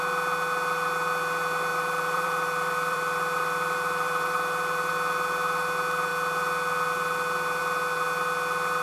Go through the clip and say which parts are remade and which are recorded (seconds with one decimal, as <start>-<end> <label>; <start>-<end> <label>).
0.0-1.7 recorded; 1.7-4.9 remade; 4.9-8.8 recorded